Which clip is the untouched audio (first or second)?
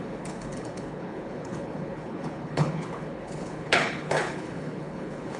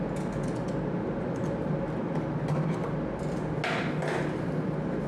second